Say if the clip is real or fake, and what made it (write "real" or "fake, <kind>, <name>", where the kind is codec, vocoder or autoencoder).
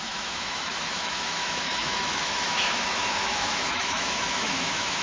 fake, autoencoder, DAC-VAE